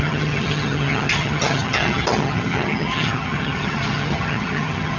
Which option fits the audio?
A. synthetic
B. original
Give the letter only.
A